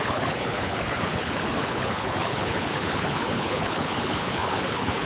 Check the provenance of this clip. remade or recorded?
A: remade